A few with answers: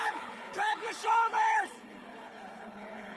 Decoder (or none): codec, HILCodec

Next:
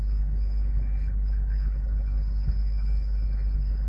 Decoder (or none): codec, HILCodec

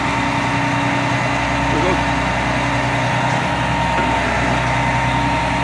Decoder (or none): none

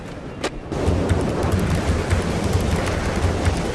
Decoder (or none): none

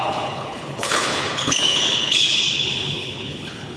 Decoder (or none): codec, HILCodec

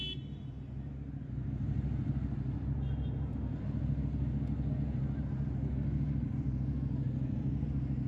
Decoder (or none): none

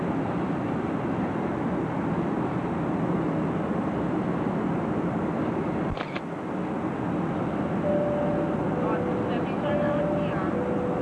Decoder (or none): none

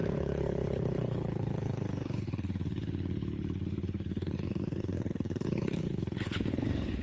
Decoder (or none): codec, HILCodec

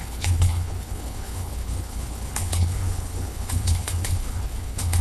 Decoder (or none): codec, HILCodec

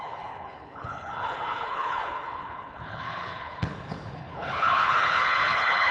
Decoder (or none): codec, HILCodec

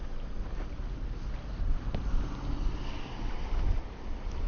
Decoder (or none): none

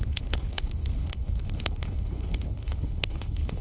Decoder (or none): codec, HILCodec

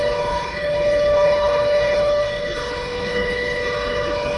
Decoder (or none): codec, HILCodec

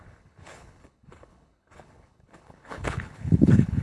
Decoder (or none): codec, HILCodec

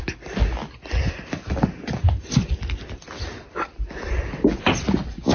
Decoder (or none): none